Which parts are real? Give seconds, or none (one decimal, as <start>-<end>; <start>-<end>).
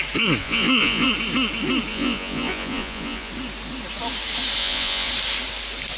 0.0-0.4; 1.1-1.9; 3.3-4.6; 5.1-6.0